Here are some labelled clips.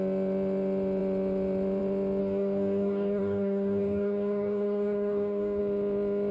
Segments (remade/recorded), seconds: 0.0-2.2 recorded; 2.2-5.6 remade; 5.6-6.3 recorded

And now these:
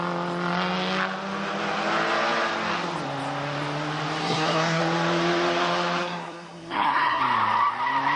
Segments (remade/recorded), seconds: 0.0-4.2 recorded; 4.2-4.8 remade; 4.8-6.0 recorded; 6.0-7.2 remade; 7.2-8.2 recorded